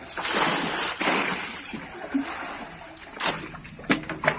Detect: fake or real real